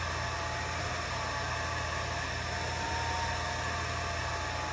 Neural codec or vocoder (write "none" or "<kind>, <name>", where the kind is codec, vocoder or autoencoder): none